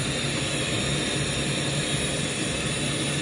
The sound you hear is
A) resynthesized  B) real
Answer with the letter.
B